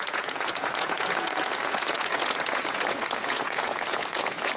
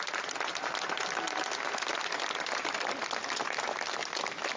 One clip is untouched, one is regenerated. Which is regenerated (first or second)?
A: first